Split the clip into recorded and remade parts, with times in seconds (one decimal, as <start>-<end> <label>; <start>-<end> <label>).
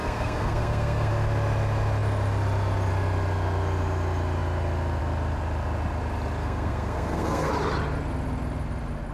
0.0-1.1 remade; 1.1-6.4 recorded; 6.4-7.5 remade; 7.5-9.1 recorded